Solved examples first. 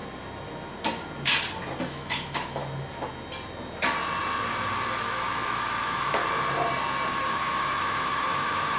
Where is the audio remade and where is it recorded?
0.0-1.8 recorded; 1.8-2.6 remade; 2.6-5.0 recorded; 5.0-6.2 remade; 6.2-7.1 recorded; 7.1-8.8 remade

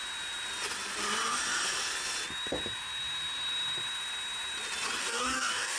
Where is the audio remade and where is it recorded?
0.0-5.0 recorded; 5.0-5.8 remade